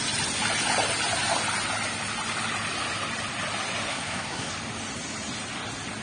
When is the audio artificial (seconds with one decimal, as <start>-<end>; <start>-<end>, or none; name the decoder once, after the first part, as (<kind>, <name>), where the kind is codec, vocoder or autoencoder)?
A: 3.9-4.5 (codec, SNAC)

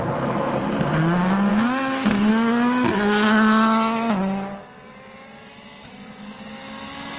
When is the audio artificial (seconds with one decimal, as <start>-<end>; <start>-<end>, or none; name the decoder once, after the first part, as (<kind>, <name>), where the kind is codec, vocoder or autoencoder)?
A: 1.5-2.3 (codec, SNAC)

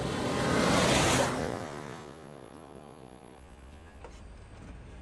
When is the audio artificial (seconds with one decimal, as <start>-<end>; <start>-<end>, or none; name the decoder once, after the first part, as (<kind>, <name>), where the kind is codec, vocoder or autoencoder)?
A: 1.4-4.0 (vocoder, Vocos)